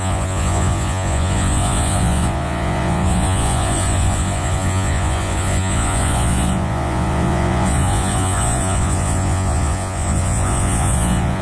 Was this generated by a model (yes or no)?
yes